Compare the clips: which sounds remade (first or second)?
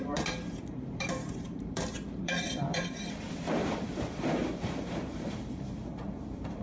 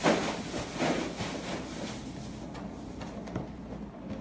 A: first